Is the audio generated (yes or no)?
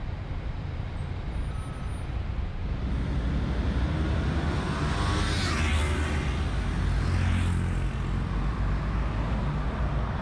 no